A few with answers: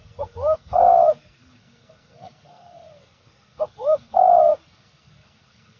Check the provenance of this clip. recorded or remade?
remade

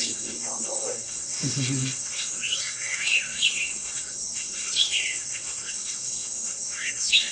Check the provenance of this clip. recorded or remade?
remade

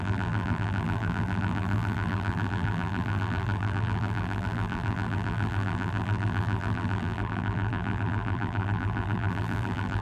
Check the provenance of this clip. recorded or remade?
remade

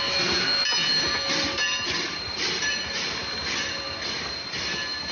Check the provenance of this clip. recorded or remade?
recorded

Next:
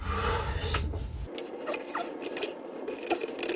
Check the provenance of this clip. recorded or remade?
recorded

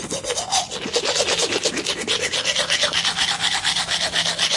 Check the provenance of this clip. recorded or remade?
recorded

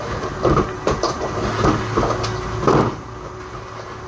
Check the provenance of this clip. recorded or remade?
recorded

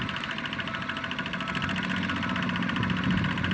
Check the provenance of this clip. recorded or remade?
recorded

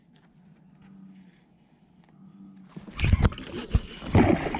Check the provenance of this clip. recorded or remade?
recorded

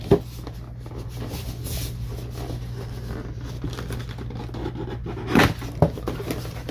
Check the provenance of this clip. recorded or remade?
recorded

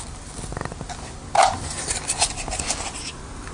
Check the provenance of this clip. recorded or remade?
recorded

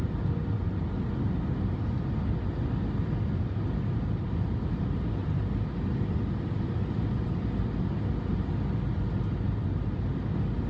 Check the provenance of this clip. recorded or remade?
recorded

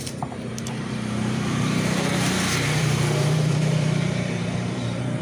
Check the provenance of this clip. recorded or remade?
remade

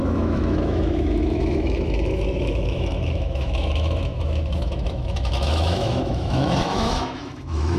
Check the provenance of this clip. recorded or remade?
remade